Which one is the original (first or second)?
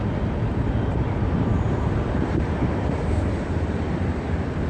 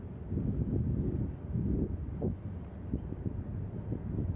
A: second